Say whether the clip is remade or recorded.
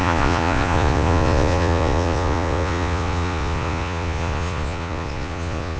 remade